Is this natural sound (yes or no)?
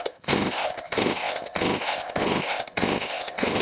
no